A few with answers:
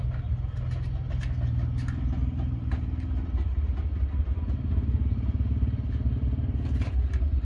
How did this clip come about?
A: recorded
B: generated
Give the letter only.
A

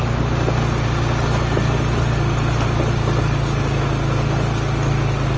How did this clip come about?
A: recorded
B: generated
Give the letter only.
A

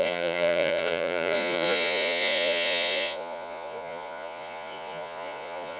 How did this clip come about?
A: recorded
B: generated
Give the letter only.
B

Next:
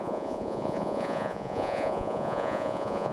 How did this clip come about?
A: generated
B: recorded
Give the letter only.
A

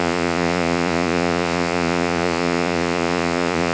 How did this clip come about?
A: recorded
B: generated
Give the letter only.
B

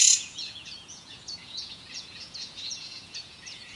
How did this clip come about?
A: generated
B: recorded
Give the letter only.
A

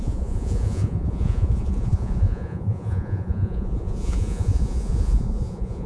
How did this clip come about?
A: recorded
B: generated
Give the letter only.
B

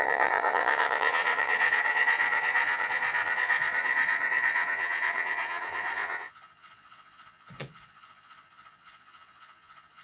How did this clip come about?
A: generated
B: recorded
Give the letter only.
A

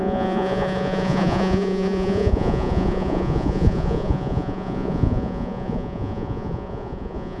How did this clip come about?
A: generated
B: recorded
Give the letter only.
A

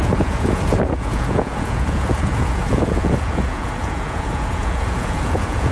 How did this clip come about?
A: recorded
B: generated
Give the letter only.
B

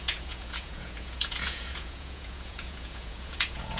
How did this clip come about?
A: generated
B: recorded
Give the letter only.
A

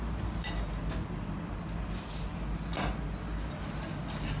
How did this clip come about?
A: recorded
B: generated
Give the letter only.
A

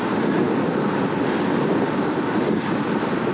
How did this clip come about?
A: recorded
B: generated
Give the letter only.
A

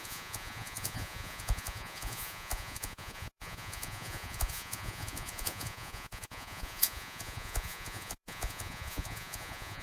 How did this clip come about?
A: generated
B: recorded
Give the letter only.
A